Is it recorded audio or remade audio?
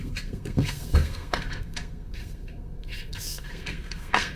remade